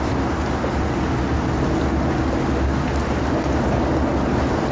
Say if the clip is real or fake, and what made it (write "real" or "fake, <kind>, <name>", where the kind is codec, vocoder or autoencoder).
real